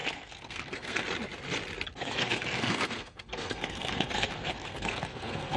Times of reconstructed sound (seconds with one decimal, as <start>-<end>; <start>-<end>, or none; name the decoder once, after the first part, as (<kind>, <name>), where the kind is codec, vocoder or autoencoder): 0.0-1.0 (codec, SNAC); 2.0-5.6